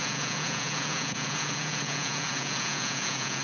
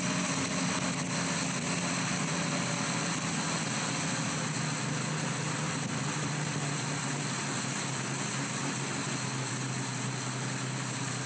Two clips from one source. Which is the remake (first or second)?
first